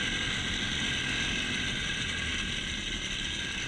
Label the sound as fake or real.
real